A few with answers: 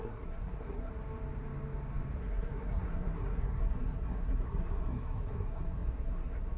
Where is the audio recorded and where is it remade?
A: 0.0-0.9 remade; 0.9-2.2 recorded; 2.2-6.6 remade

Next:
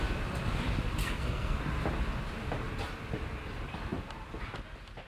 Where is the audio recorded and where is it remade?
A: 0.0-1.0 recorded; 1.0-1.6 remade; 1.6-5.1 recorded

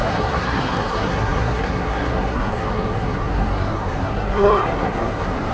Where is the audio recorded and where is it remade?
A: 0.0-5.5 remade

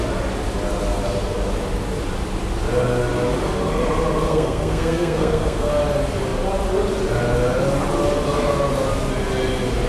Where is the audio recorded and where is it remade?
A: 0.0-4.3 recorded; 4.3-5.7 remade; 5.7-9.9 recorded

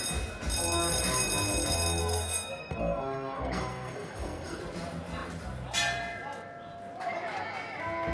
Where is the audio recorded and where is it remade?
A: 0.0-2.0 recorded; 2.0-4.6 remade; 4.6-8.1 recorded

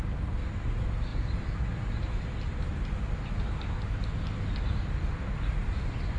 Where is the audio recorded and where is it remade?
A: 0.0-6.2 recorded

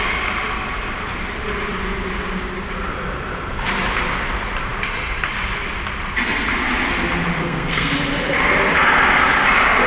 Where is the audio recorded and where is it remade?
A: 0.0-7.4 recorded; 7.4-7.9 remade; 7.9-9.9 recorded

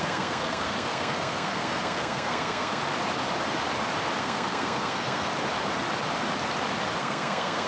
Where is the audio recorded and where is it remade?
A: 0.0-2.8 remade; 2.8-4.2 recorded; 4.2-5.3 remade; 5.3-7.0 recorded; 7.0-7.7 remade